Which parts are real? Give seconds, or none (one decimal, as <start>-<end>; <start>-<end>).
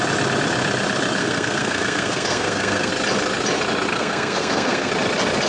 0.0-1.2; 2.9-3.9; 4.9-5.5